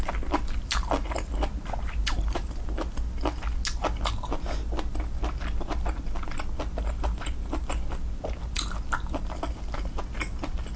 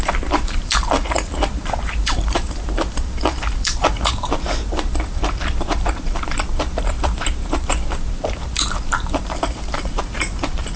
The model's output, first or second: second